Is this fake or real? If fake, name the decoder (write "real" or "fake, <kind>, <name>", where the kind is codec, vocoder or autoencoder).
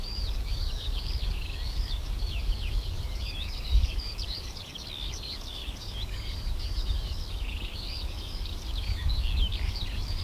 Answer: fake, codec, DAC